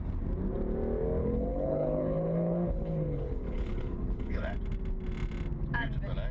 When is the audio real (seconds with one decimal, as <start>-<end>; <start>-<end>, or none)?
0.0-1.2; 4.4-6.3